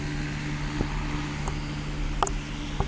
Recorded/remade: recorded